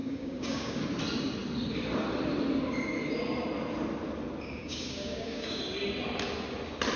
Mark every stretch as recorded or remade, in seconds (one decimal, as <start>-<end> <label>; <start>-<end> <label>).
0.0-0.8 remade; 0.8-4.6 recorded; 4.6-5.6 remade; 5.6-7.0 recorded